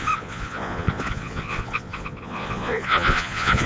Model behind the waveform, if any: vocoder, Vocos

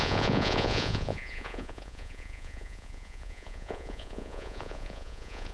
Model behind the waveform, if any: vocoder, Vocos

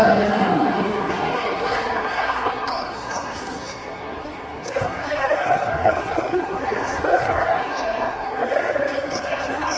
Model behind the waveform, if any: codec, SNAC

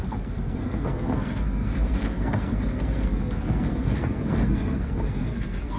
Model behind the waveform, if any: codec, SNAC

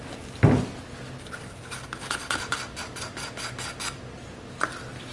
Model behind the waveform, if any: none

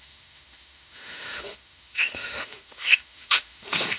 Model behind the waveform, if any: autoencoder, DAC-VAE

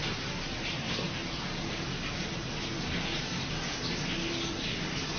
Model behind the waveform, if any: none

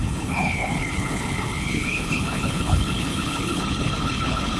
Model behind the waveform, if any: codec, HILCodec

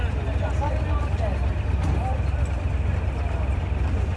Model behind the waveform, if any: none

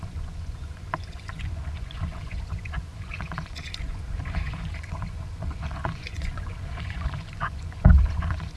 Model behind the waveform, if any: vocoder, Vocos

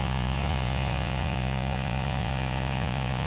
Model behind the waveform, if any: vocoder, Vocos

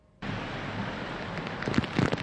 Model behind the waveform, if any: none